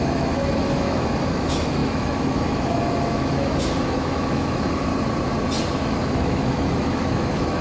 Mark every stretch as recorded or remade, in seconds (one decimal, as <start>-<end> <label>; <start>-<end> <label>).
0.0-4.9 remade; 4.9-5.8 recorded; 5.8-7.6 remade